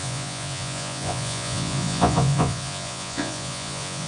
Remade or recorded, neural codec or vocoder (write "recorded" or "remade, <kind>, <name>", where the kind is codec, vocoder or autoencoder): remade, vocoder, Vocos